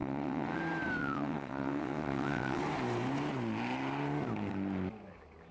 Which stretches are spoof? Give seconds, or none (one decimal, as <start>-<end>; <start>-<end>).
0.0-0.6; 1.0-2.6